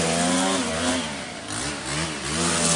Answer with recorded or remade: recorded